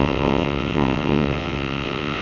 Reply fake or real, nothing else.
fake